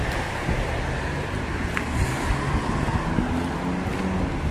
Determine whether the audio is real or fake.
real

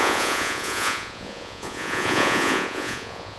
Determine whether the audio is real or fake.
fake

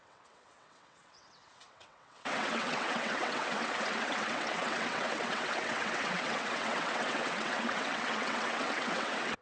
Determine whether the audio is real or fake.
fake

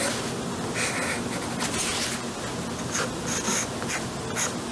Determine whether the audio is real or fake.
real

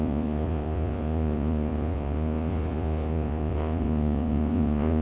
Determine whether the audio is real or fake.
fake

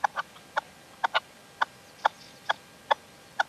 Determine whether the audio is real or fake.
real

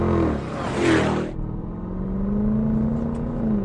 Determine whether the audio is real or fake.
real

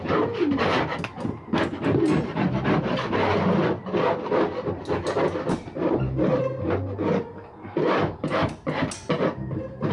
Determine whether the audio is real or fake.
real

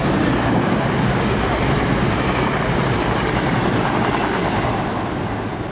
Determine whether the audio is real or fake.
real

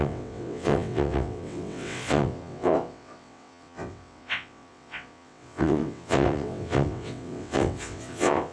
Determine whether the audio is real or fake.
fake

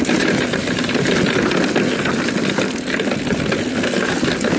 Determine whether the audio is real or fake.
real